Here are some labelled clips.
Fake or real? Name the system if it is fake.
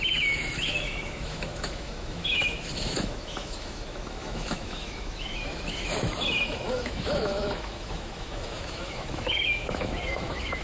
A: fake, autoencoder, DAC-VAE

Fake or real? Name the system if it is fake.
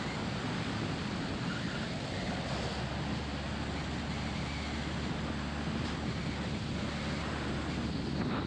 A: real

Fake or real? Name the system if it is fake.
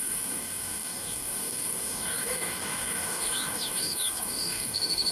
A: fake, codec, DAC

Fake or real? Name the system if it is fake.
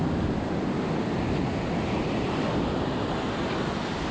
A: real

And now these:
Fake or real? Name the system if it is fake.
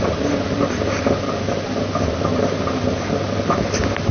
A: real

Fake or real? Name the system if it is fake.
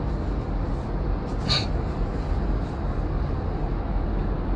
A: real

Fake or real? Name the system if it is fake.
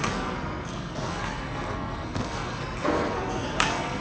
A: fake, codec, SNAC